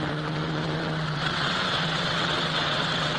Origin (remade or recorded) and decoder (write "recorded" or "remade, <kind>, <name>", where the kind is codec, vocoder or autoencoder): remade, vocoder, WaveNeXt